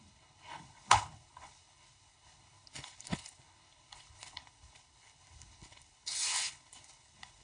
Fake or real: fake